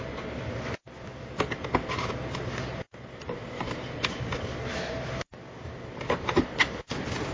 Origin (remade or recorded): recorded